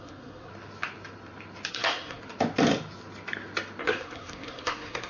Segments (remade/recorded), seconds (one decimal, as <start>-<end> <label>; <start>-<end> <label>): 0.0-0.5 remade; 0.5-1.7 recorded; 1.7-2.2 remade; 2.2-3.8 recorded; 3.8-5.1 remade